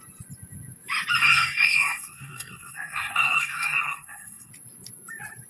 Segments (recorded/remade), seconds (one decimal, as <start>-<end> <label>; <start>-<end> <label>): 0.0-1.2 recorded; 1.2-4.5 remade; 4.5-5.5 recorded